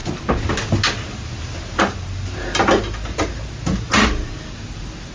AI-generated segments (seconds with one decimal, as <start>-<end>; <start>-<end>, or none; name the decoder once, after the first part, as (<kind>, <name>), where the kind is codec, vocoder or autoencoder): none